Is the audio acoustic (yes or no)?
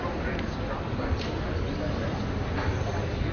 yes